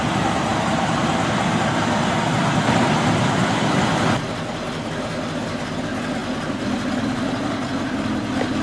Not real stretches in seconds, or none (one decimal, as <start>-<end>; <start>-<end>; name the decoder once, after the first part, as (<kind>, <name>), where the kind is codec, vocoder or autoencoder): 0.5-3.8 (vocoder, BigVGAN v2)